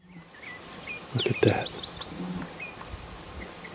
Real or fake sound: real